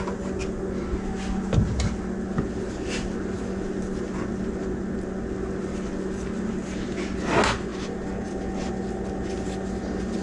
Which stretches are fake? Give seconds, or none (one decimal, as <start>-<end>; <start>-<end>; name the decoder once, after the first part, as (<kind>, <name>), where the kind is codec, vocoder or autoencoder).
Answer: none